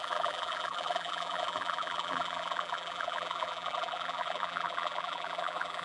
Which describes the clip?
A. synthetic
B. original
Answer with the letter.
A